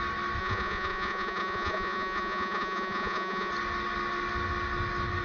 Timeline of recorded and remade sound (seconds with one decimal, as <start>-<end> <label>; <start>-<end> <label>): 0.0-0.4 recorded; 0.4-3.5 remade; 3.5-5.2 recorded